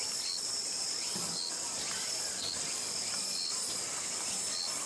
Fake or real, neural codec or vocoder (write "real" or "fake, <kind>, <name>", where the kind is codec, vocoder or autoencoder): real